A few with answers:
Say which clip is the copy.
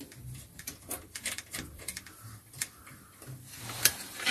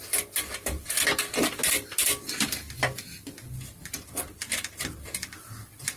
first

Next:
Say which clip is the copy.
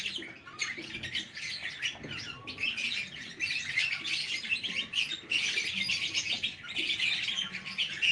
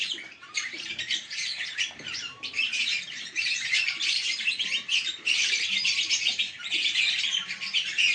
second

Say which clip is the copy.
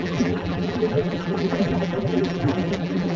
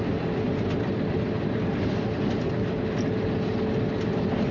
first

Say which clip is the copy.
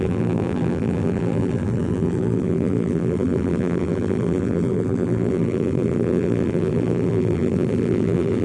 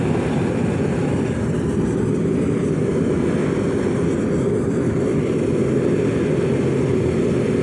first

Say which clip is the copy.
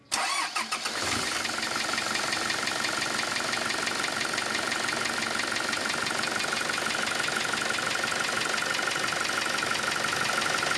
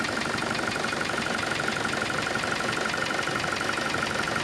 second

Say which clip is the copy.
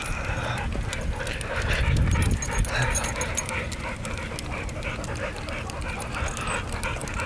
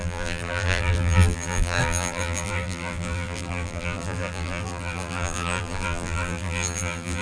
second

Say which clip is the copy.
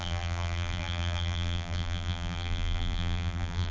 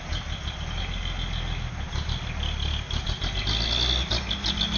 first